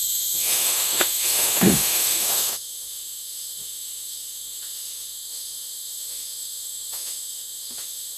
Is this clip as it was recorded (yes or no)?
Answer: no